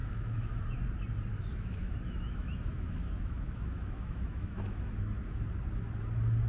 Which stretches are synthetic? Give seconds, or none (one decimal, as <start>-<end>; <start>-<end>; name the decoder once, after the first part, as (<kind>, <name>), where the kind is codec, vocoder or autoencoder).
0.0-0.6 (autoencoder, DAC-VAE); 1.3-4.9